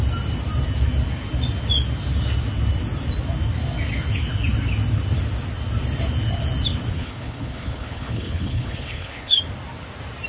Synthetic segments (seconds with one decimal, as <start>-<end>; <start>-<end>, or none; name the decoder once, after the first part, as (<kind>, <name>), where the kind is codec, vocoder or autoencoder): 6.9-9.4 (codec, HILCodec)